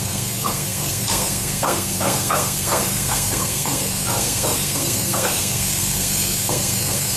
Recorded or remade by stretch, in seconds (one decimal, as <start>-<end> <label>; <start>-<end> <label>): 0.0-7.2 remade